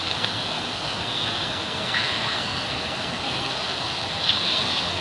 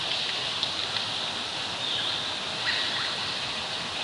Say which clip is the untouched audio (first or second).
second